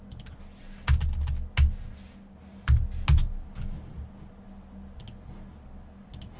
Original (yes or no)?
yes